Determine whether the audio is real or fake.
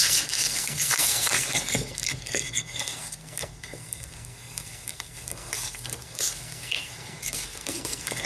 fake